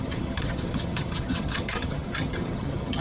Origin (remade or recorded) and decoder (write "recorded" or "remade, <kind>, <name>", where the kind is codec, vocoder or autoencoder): remade, vocoder, HiFi-GAN